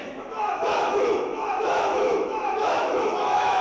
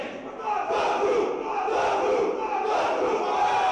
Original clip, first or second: second